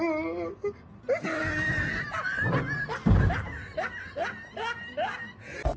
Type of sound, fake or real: real